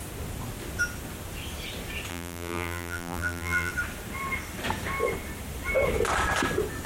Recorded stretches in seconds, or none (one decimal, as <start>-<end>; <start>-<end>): 0.0-2.1; 3.7-6.9